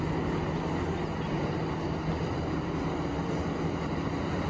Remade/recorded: recorded